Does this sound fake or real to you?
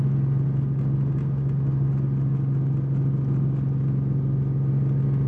real